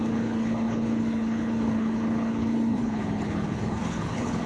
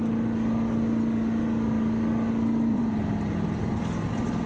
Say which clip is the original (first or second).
second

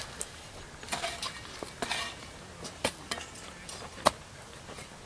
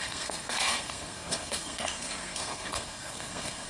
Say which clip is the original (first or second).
first